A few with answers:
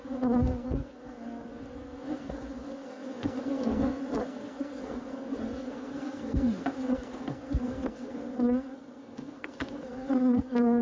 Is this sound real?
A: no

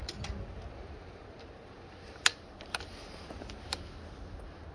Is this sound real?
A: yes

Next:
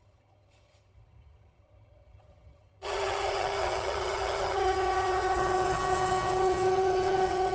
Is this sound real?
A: no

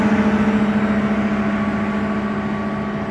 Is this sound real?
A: yes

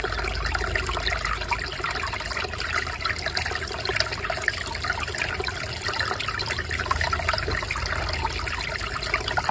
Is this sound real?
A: yes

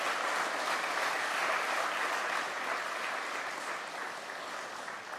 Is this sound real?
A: yes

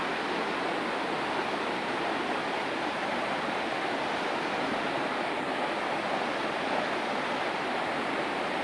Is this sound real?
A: yes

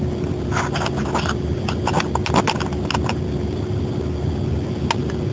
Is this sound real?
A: yes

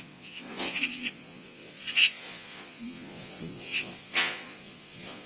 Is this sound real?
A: no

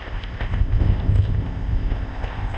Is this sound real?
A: no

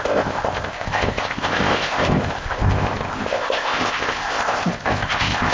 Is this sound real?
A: no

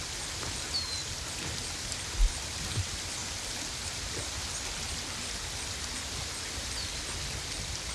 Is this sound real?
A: yes